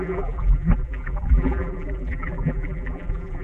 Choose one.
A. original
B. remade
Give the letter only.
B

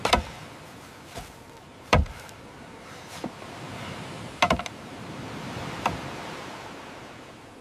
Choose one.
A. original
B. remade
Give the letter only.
B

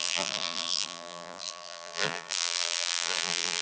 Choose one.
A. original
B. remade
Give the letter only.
B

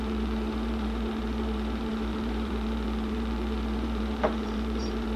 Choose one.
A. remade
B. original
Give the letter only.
A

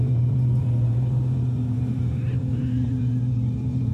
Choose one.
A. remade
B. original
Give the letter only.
A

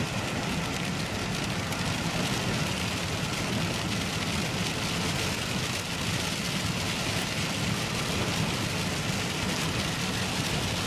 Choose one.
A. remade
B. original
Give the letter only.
B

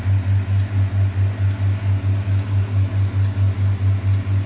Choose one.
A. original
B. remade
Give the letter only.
A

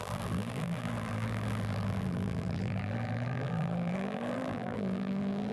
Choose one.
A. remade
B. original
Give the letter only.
A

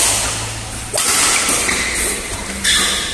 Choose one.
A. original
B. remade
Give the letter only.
A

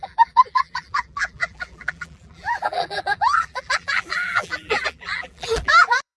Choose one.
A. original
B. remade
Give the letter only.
B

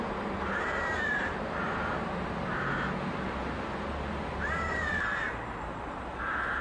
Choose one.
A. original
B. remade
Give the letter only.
B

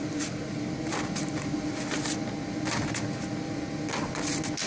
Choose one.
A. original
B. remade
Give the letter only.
A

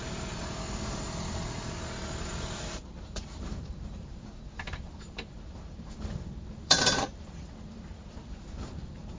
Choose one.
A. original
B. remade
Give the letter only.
B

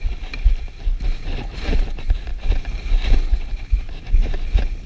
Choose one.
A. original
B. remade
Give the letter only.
A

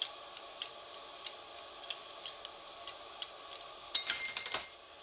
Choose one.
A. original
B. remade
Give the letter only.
A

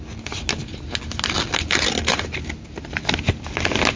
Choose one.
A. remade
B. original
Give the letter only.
B